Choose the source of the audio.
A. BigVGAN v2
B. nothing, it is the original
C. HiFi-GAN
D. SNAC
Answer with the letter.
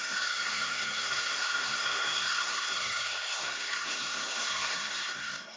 D